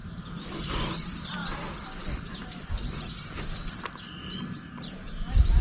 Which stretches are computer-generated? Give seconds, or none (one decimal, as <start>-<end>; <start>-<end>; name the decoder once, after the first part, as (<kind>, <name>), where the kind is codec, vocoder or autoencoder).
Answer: 0.0-0.5 (vocoder, BigVGAN v2); 1.4-4.0